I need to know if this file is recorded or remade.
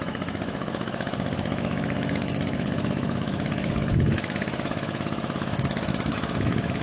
remade